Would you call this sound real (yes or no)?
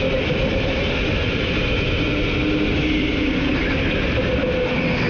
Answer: yes